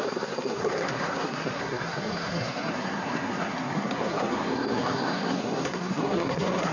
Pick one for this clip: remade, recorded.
remade